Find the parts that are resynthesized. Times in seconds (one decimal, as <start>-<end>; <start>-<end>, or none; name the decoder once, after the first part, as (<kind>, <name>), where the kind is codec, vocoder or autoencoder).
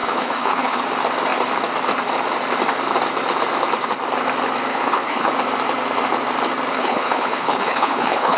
0.0-0.8 (codec, HILCodec); 4.7-5.3; 6.7-8.4